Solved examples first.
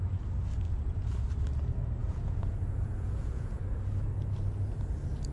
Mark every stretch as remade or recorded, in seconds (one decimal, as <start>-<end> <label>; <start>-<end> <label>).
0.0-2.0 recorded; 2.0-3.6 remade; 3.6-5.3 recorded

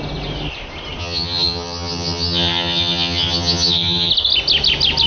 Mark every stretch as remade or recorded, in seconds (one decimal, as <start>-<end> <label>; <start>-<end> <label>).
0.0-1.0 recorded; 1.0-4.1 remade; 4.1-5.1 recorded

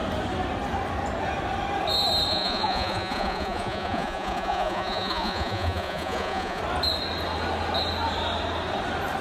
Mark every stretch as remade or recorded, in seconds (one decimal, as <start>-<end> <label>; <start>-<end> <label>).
0.0-2.3 recorded; 2.3-6.6 remade; 6.6-9.2 recorded

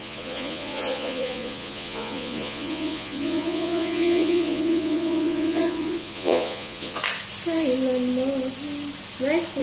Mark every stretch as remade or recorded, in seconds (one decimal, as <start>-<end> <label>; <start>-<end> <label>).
0.0-7.0 remade; 7.0-9.6 recorded

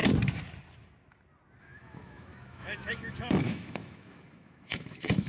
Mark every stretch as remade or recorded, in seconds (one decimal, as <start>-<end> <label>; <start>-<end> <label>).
0.0-1.6 recorded; 1.6-5.3 remade